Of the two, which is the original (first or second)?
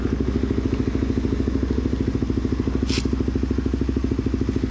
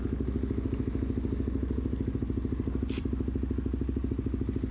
first